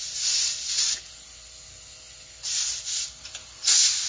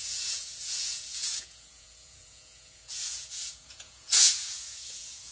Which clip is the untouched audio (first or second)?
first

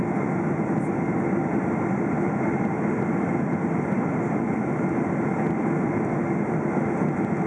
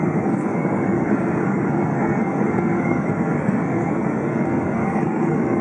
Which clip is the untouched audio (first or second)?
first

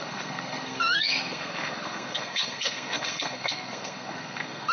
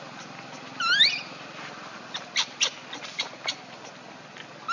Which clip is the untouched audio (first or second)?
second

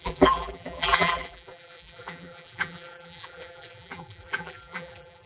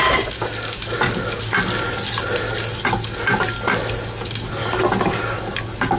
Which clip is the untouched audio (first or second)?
second